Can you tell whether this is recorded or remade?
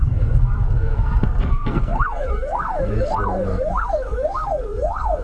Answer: remade